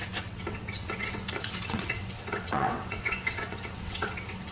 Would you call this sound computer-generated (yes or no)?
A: yes